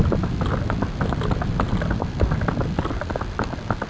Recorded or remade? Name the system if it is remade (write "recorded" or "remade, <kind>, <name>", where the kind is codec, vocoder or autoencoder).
recorded